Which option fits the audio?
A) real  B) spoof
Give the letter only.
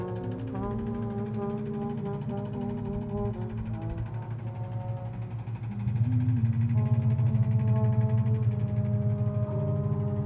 A